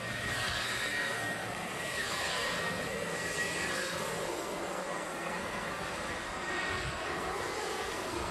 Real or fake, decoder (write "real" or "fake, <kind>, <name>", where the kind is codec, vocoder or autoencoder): fake, codec, SNAC